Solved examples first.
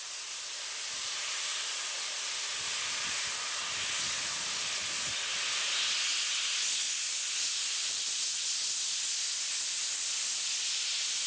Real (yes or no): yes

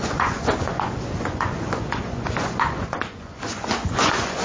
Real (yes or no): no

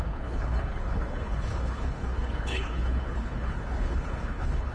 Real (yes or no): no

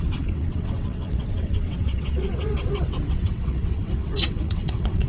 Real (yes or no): no